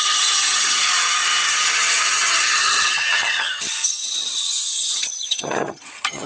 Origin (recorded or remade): remade